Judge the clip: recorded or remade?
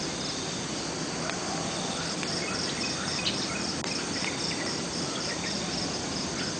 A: recorded